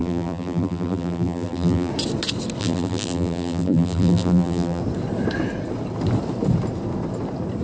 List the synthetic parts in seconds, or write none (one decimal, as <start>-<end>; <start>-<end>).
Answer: 0.0-1.9; 2.6-4.8